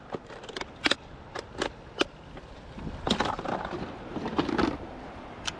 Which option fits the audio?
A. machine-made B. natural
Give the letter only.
B